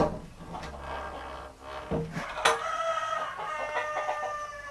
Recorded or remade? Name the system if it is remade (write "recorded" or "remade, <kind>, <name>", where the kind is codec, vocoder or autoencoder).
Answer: recorded